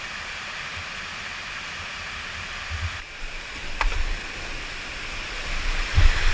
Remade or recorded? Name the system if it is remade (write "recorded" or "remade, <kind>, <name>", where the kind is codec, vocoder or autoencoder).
recorded